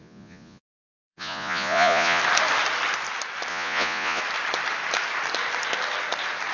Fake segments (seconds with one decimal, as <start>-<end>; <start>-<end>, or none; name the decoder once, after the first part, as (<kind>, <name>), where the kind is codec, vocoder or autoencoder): 0.0-2.2 (vocoder, Vocos); 3.5-4.2